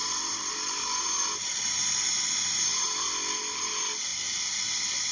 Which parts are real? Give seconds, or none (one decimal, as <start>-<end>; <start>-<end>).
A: 0.0-5.1